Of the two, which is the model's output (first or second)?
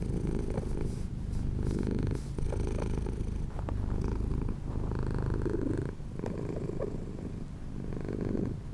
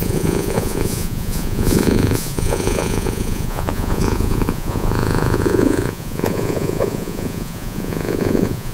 second